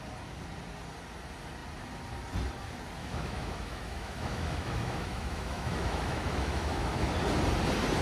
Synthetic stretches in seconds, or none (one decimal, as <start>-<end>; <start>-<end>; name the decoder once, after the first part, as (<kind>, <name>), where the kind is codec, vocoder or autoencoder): 3.0-7.1 (autoencoder, DAC-VAE)